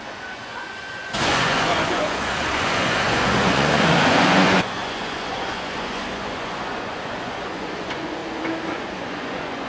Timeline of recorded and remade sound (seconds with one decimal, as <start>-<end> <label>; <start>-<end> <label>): 0.0-8.2 remade; 8.2-8.7 recorded; 8.7-9.7 remade